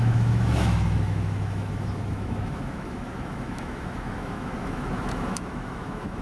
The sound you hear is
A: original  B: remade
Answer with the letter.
B